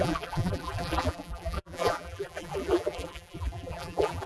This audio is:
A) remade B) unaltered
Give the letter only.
A